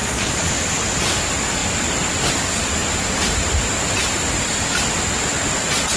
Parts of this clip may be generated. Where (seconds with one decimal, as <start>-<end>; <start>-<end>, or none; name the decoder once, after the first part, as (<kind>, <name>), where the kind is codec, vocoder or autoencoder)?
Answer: 0.0-0.5 (vocoder, Vocos)